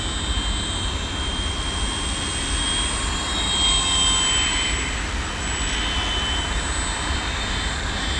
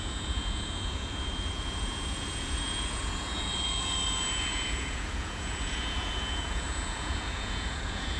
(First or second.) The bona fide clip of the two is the first